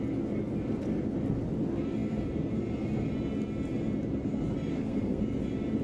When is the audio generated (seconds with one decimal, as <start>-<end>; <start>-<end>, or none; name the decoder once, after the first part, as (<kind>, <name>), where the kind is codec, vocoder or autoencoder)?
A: 4.7-5.2 (codec, SNAC)